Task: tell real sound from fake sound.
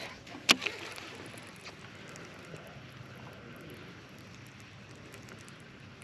real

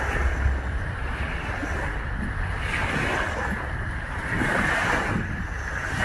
real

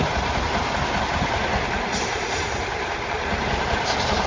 real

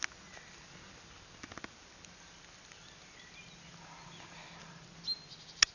real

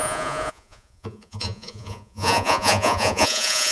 fake